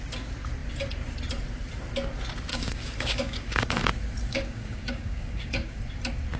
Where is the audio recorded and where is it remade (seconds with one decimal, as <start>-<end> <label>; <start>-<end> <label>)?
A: 0.0-2.5 recorded; 2.5-3.9 remade; 3.9-4.3 recorded; 4.3-5.8 remade; 5.8-6.4 recorded